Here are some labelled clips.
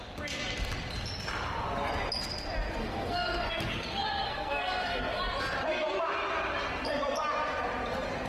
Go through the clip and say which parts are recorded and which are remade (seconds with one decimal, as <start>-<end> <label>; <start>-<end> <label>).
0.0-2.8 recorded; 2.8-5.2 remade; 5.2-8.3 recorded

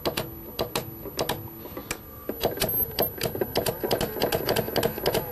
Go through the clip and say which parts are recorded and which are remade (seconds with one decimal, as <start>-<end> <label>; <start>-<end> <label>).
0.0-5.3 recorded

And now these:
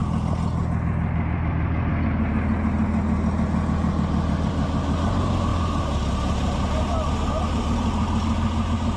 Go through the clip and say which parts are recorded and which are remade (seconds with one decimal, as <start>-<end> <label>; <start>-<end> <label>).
0.0-9.0 recorded

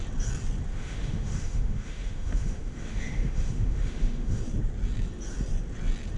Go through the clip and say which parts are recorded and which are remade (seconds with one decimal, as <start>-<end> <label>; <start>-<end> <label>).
0.0-0.7 recorded; 0.7-4.4 remade; 4.4-6.2 recorded

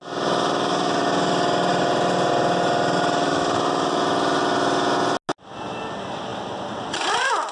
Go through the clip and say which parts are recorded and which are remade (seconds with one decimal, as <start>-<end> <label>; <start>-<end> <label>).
0.0-7.5 recorded